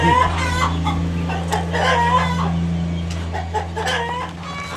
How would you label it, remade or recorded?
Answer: recorded